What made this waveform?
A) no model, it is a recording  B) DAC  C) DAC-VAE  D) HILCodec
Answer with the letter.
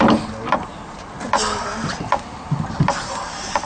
A